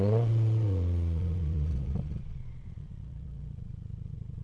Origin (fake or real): fake